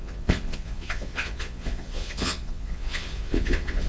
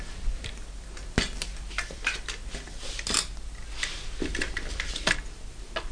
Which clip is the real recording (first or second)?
second